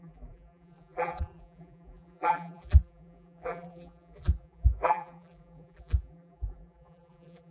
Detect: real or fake fake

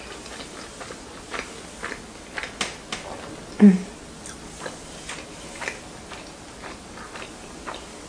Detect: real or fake real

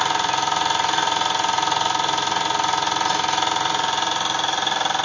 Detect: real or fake real